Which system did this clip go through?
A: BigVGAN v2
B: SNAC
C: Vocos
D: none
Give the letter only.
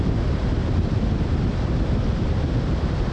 A